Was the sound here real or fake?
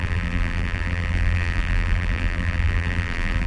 fake